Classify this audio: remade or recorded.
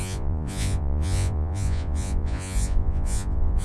remade